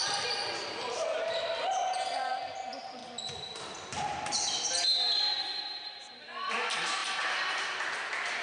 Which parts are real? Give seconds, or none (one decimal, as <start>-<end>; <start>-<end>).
none